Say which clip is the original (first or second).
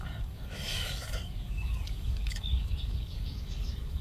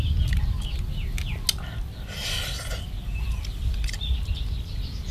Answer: second